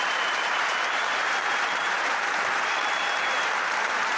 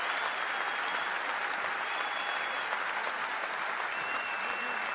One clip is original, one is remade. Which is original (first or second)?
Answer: second